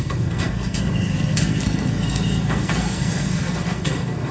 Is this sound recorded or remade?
remade